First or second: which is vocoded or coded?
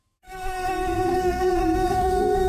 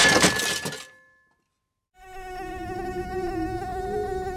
first